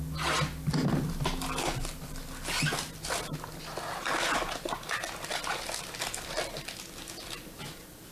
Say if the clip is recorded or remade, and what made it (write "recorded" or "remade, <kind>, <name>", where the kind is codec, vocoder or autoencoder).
recorded